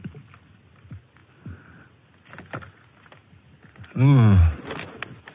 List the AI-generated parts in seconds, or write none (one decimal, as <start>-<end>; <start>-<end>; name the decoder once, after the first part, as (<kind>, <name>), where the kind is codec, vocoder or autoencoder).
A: none